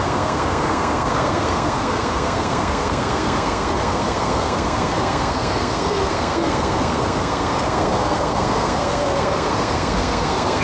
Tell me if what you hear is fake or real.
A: fake